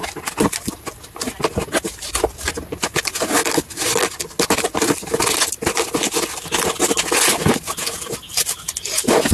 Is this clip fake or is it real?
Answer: real